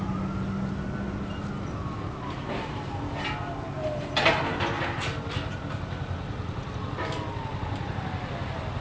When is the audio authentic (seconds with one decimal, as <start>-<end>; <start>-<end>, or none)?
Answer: 0.0-8.8